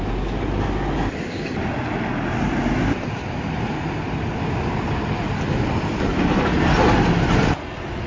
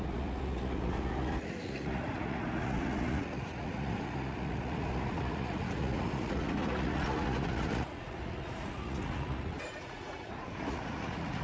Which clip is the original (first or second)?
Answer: first